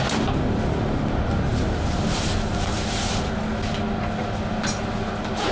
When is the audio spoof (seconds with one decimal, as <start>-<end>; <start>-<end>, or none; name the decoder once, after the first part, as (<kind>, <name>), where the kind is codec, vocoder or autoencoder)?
none